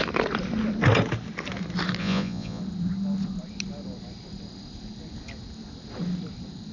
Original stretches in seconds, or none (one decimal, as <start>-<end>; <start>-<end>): 0.0-2.0; 2.6-6.7

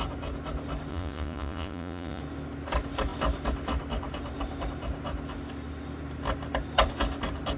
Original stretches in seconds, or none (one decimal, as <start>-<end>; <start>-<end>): 0.0-0.9; 2.2-7.6

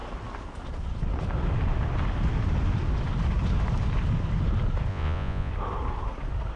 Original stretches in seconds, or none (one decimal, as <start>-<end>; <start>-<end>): 0.0-4.9; 5.5-6.6

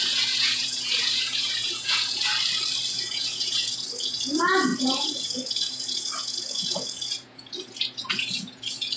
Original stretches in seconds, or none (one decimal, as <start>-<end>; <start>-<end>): 2.3-2.9

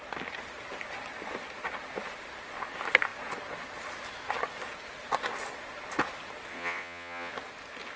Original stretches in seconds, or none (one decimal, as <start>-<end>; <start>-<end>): 0.0-6.5; 7.3-8.0

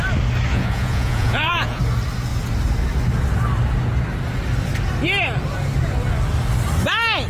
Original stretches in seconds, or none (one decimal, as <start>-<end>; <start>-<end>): 0.0-0.5; 1.8-7.3

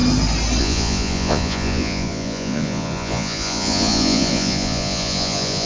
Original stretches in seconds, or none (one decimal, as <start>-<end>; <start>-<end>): 0.0-0.6